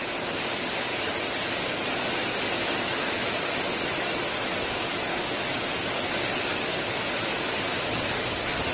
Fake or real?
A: real